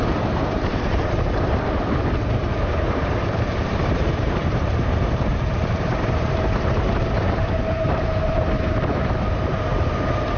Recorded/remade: remade